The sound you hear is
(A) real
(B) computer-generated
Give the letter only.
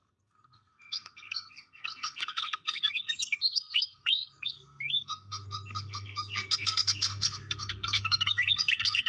B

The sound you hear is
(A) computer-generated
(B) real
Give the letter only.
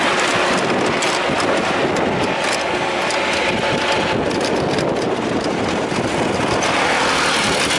B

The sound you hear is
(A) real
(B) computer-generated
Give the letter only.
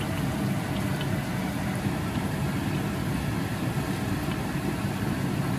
A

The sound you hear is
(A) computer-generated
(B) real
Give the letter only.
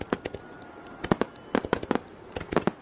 B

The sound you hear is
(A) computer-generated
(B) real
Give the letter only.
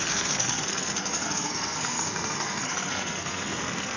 A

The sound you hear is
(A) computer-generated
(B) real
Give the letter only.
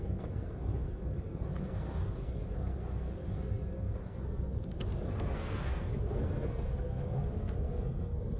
A